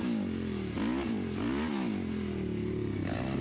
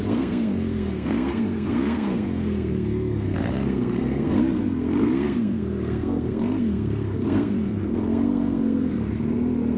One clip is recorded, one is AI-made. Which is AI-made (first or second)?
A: second